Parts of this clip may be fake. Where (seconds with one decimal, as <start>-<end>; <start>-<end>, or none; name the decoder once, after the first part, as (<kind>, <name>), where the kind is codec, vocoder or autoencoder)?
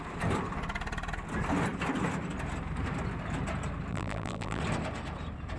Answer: 3.9-4.6 (vocoder, BigVGAN v2)